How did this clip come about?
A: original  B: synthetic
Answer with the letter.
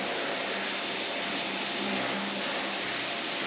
A